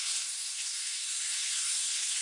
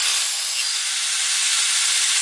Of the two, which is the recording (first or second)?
second